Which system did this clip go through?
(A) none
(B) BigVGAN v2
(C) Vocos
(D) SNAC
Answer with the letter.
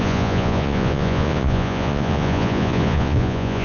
C